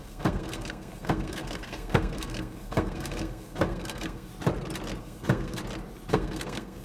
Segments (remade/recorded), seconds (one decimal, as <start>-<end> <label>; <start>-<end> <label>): 0.0-4.3 remade; 4.3-5.0 recorded; 5.0-5.6 remade; 5.6-6.1 recorded; 6.1-6.8 remade